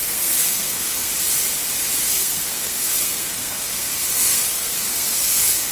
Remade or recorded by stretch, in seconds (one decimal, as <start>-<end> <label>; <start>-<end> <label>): 0.0-1.1 remade; 1.1-2.0 recorded; 2.0-5.7 remade